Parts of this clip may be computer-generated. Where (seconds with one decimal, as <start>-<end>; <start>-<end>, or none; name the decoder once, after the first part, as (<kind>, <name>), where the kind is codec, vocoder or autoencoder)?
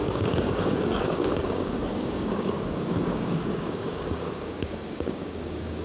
0.0-5.8 (codec, DAC)